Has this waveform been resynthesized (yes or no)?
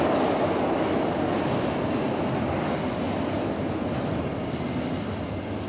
no